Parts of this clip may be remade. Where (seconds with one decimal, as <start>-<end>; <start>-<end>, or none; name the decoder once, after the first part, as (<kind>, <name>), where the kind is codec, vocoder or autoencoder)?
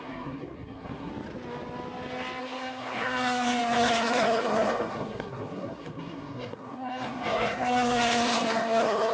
0.0-1.1 (codec, SNAC); 2.4-9.1